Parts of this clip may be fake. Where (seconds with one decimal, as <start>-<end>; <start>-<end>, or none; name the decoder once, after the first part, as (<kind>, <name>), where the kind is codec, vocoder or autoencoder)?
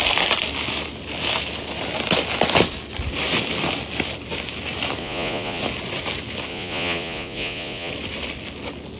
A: 5.0-5.6 (vocoder, Vocos); 6.5-7.9